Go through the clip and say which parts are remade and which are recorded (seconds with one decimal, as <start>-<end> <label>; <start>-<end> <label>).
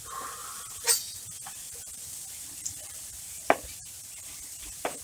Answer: 0.0-0.4 recorded; 0.4-3.4 remade; 3.4-4.0 recorded; 4.0-5.0 remade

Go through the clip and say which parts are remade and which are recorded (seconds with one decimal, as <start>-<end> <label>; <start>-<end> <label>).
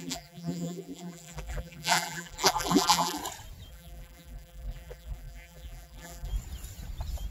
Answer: 0.0-3.2 remade; 3.2-3.7 recorded; 3.7-6.3 remade; 6.3-7.3 recorded